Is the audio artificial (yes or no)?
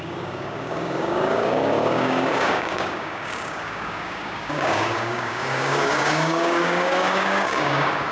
yes